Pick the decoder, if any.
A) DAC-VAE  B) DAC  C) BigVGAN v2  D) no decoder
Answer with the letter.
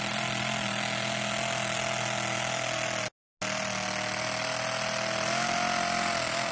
D